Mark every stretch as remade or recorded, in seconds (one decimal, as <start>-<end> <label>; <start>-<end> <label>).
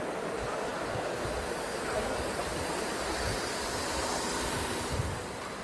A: 0.0-2.5 recorded; 2.5-3.1 remade; 3.1-5.6 recorded